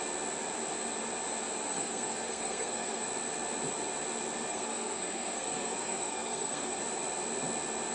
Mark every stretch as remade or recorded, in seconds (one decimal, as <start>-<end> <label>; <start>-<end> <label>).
0.0-1.7 recorded; 1.7-3.1 remade; 3.1-4.5 recorded; 4.5-6.8 remade; 6.8-7.9 recorded